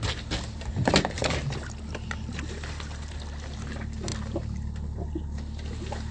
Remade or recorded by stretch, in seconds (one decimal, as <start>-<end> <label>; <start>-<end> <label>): 0.0-6.1 recorded

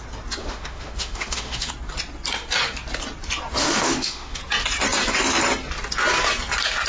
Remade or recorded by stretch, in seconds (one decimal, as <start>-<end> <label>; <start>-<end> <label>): 0.0-0.4 recorded; 0.4-1.7 remade; 1.7-3.6 recorded; 3.6-4.4 remade; 4.4-6.9 recorded

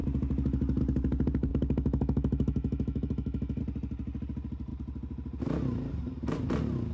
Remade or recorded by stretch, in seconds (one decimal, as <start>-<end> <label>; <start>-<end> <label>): 0.0-1.5 recorded; 1.5-3.6 remade; 3.6-6.9 recorded

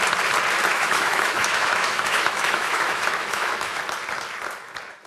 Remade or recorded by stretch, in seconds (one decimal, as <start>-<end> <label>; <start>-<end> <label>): 0.0-0.7 recorded; 0.7-3.8 remade; 3.8-5.1 recorded

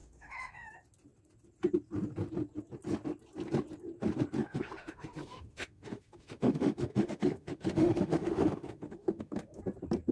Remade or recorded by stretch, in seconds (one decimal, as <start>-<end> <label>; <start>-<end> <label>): 0.0-0.7 remade; 0.7-4.4 recorded; 4.4-9.6 remade; 9.6-10.1 recorded